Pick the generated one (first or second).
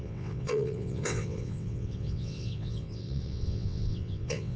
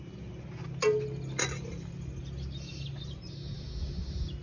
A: first